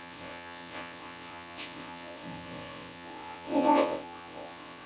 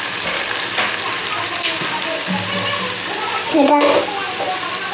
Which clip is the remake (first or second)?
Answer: first